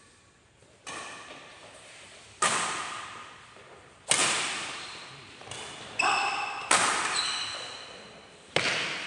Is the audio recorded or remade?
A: recorded